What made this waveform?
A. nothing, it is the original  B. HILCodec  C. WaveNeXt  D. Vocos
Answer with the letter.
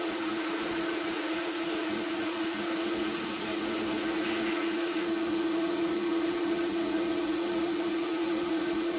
D